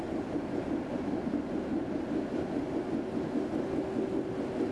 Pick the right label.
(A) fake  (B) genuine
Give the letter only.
B